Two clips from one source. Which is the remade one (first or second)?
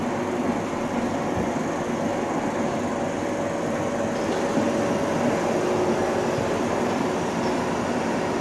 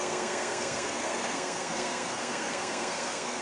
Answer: second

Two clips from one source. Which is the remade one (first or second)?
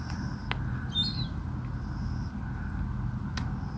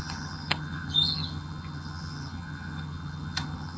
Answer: second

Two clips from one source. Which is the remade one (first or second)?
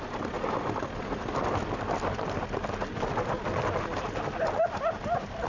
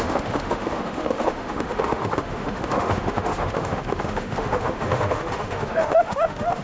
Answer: second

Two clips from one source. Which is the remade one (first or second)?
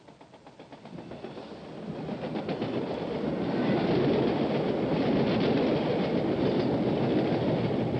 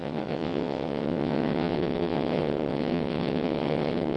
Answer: second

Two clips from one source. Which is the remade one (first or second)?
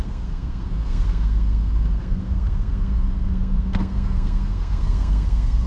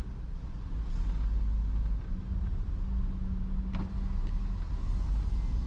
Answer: first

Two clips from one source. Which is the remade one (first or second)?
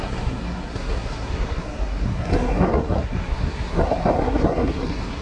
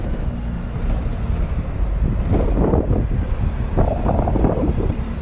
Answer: first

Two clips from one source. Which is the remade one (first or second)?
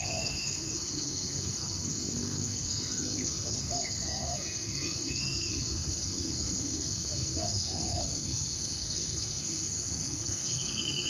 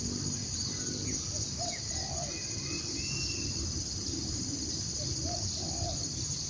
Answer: first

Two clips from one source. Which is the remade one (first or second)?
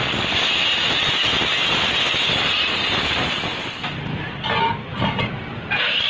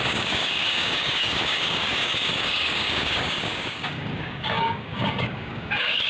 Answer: second